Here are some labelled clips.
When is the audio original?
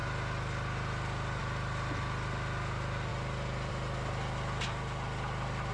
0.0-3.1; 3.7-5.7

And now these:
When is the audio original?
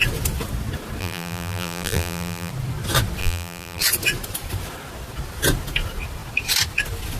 0.0-1.0; 2.5-3.2; 3.8-7.2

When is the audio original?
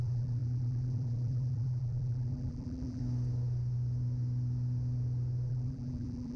3.0-5.5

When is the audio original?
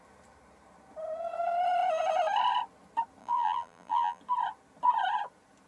0.0-3.2; 4.2-5.7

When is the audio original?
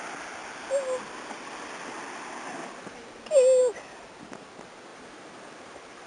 0.0-4.9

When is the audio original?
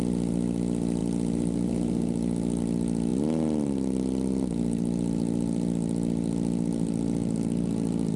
0.0-8.2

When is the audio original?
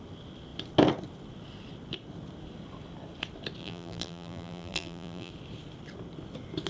0.0-3.6; 5.3-6.7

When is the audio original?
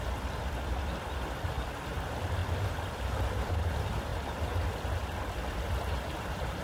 none